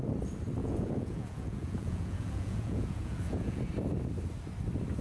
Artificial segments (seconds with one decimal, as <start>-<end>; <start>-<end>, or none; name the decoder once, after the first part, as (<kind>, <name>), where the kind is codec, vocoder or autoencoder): 0.6-3.6 (vocoder, Vocos)